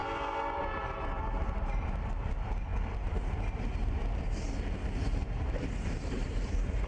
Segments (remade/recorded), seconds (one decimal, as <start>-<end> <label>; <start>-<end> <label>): 0.0-0.6 recorded; 0.6-6.9 remade